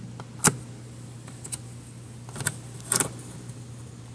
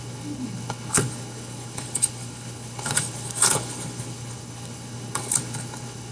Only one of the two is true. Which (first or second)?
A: first